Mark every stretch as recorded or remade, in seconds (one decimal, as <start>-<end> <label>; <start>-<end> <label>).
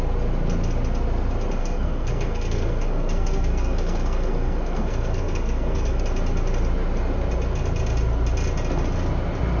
0.0-1.6 recorded; 1.6-6.0 remade; 6.0-9.6 recorded